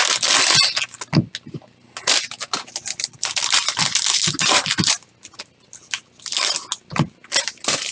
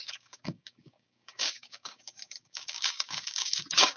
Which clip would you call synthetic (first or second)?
second